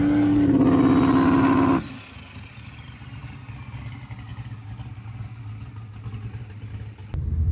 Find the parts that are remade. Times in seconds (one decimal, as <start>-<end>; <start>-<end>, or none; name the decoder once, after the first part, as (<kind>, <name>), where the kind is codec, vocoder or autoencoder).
none